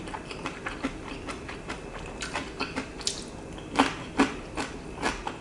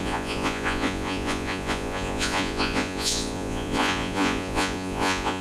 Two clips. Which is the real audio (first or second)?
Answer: first